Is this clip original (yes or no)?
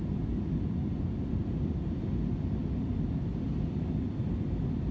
yes